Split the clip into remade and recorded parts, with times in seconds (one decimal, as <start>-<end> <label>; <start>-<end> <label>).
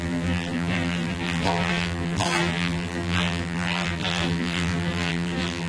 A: 0.0-5.7 remade